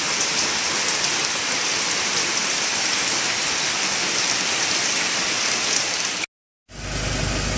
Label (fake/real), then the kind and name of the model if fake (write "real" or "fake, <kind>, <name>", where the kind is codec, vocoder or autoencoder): real